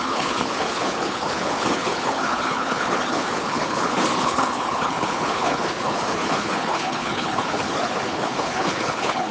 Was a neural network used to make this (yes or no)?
yes